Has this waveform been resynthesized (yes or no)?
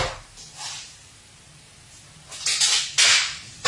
no